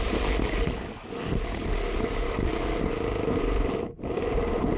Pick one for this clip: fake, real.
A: real